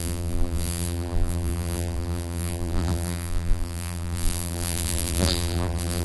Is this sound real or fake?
fake